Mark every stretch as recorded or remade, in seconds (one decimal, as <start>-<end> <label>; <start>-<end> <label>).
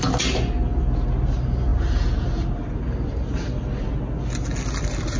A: 0.0-5.2 recorded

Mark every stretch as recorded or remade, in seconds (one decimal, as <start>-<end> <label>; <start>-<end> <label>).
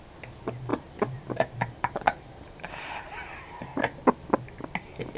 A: 0.0-0.7 recorded; 0.7-3.8 remade; 3.8-5.2 recorded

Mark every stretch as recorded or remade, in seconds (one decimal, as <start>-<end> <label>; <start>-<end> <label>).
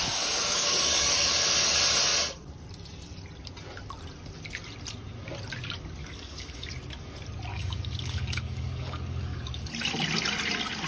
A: 0.0-1.3 remade; 1.3-6.0 recorded; 6.0-6.7 remade; 6.7-7.5 recorded; 7.5-9.7 remade; 9.7-10.9 recorded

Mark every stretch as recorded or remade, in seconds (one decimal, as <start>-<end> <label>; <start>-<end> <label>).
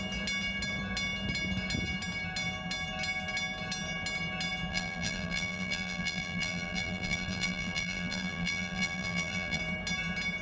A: 0.0-4.7 recorded; 4.7-9.6 remade; 9.6-10.4 recorded